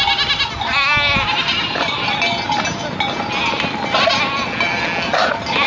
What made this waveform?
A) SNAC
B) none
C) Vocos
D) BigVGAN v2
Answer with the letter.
B